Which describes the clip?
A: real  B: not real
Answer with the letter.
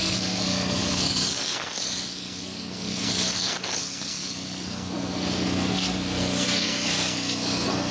B